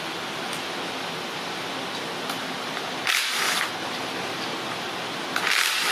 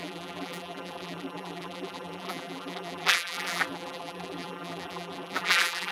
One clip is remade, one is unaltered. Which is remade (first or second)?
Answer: second